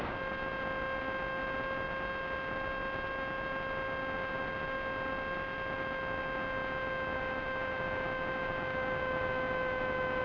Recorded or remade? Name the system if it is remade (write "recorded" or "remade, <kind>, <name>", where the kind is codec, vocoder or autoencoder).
recorded